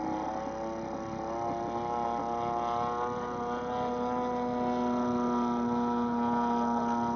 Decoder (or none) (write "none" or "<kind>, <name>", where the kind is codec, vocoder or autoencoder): none